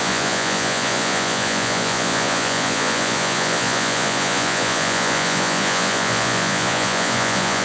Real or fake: fake